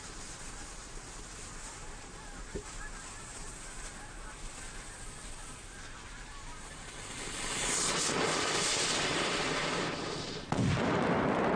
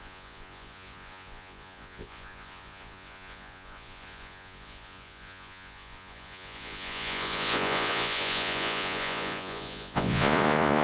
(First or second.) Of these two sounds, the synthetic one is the second